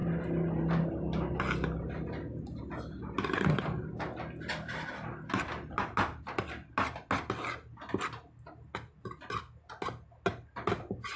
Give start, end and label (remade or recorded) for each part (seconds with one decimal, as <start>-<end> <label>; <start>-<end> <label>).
0.0-11.2 recorded